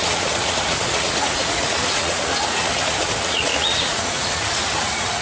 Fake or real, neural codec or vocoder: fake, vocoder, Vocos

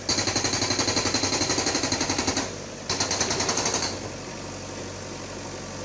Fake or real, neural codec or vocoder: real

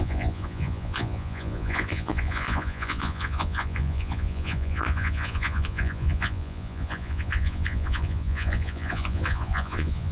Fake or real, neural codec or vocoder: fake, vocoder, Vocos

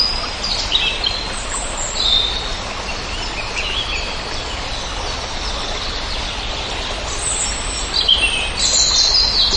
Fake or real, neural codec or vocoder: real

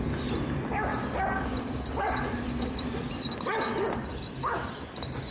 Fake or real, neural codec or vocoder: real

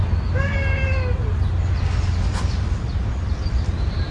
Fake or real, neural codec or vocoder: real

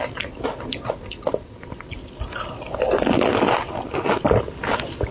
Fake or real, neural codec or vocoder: real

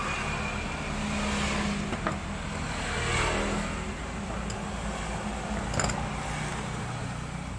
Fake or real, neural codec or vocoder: real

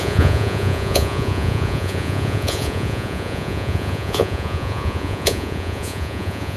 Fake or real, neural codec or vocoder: fake, vocoder, Vocos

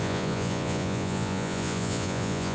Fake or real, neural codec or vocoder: fake, vocoder, Vocos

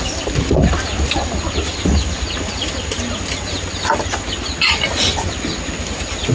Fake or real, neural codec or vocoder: real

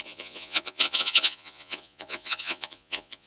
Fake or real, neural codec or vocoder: fake, vocoder, Vocos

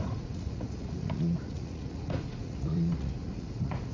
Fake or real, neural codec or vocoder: fake, vocoder, Vocos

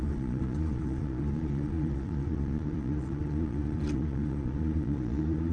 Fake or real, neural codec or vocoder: fake, vocoder, Vocos